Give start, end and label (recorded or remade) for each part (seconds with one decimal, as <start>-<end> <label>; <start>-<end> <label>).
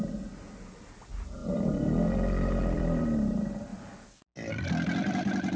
0.0-1.4 recorded; 1.4-3.0 remade; 3.0-5.6 recorded